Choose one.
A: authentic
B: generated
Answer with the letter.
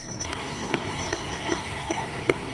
B